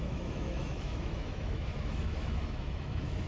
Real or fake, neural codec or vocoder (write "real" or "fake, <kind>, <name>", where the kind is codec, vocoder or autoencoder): fake, autoencoder, DAC-VAE